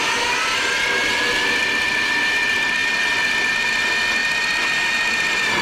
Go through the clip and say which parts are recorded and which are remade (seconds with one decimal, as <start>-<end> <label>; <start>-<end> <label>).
0.0-1.0 recorded; 1.0-1.7 remade; 1.7-2.8 recorded; 2.8-3.5 remade; 3.5-5.6 recorded